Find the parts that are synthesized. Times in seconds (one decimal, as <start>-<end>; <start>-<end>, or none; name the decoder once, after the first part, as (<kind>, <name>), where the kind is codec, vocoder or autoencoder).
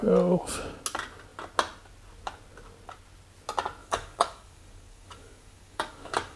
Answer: 3.8-6.4 (codec, DAC)